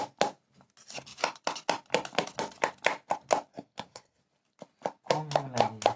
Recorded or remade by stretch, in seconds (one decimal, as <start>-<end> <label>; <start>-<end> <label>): 0.0-3.5 recorded; 3.5-4.2 remade; 4.2-6.0 recorded